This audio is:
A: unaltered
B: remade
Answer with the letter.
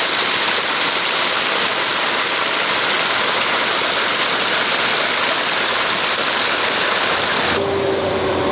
A